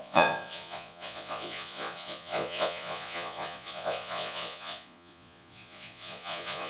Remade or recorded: remade